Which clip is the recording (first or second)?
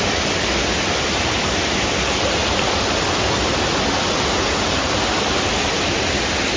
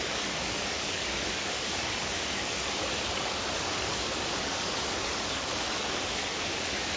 first